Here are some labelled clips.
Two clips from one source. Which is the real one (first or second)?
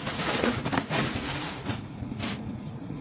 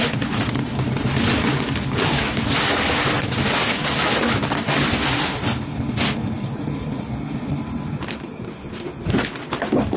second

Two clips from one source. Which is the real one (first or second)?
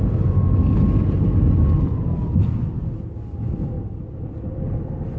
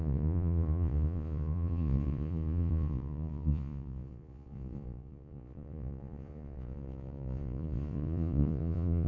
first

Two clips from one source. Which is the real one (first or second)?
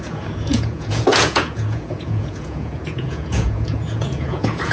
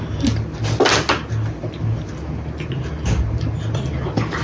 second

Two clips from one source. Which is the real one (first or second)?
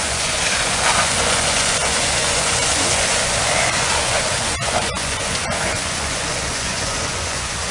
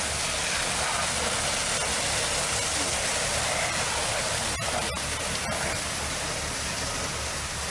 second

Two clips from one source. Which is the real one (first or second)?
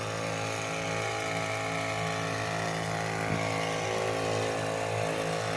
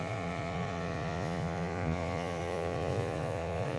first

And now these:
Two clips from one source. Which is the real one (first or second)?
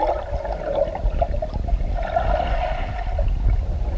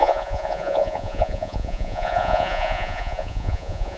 first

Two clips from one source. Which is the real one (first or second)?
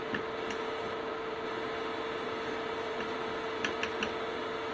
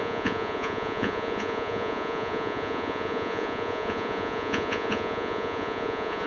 first